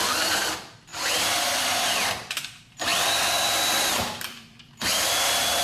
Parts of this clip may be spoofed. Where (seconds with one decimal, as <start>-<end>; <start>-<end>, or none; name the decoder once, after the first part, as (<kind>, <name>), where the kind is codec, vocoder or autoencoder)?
0.0-0.9 (vocoder, BigVGAN v2); 2.4-5.6